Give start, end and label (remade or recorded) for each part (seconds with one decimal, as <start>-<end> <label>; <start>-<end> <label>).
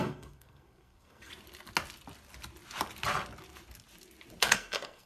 0.0-1.3 remade; 1.3-4.4 recorded; 4.4-5.1 remade